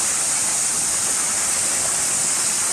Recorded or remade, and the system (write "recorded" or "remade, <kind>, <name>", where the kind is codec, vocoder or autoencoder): recorded